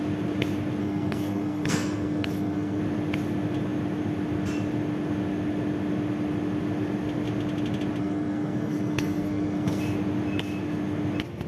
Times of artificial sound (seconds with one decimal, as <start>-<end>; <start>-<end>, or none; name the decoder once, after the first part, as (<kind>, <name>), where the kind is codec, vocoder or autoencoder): 0.8-2.8 (codec, SNAC); 8.0-9.8